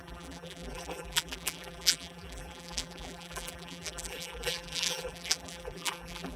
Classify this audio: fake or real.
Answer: fake